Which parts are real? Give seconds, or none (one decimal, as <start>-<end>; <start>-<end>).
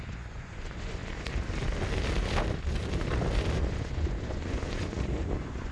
1.0-3.6